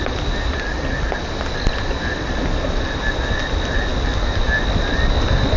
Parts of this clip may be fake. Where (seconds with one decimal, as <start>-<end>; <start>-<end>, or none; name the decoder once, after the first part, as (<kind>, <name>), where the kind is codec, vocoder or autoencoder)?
none